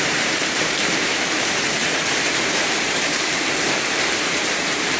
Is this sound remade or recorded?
remade